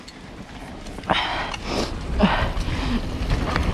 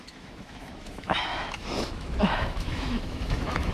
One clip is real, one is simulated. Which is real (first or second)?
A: first